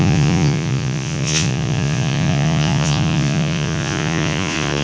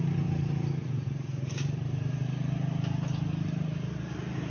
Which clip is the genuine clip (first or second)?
second